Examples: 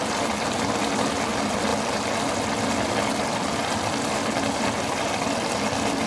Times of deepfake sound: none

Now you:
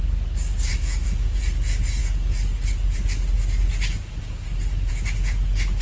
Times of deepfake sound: 0.7-1.4 (autoencoder, DAC-VAE)

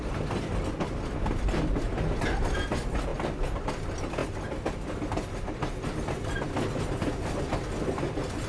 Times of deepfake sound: none

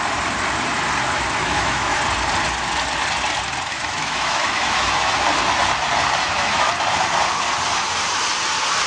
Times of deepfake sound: 1.4-2.0 (autoencoder, DAC-VAE); 3.7-5.1; 6.2-6.7